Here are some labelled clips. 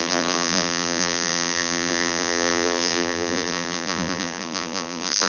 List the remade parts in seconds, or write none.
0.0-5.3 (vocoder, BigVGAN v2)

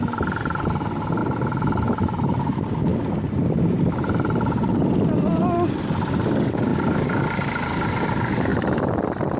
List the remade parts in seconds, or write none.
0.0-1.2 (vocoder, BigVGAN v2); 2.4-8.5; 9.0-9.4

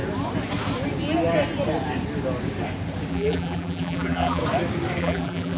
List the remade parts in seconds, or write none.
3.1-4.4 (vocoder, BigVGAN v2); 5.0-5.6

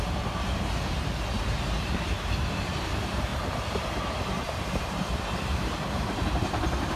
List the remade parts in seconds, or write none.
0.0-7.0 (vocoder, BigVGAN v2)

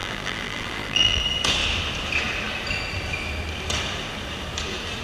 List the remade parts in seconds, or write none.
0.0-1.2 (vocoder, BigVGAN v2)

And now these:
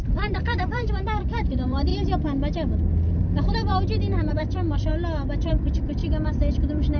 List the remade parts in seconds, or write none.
0.0-1.9 (vocoder, BigVGAN v2); 3.3-3.7; 4.3-4.9; 5.5-7.0

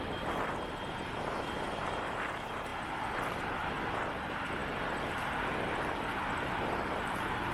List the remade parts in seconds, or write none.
none